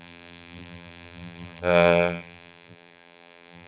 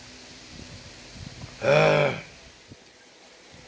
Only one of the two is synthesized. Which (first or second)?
first